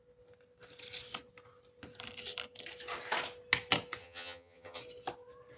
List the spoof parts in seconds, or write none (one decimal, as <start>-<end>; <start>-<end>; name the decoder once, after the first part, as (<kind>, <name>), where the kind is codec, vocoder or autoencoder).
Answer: 4.0-4.8 (vocoder, HiFi-GAN)